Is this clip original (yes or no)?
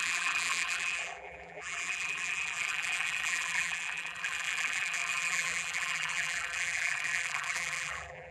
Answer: no